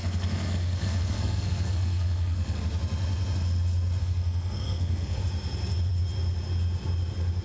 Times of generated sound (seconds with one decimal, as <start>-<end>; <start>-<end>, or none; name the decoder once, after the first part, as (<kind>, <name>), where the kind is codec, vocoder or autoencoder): 0.0-2.6 (codec, SNAC); 4.0-5.2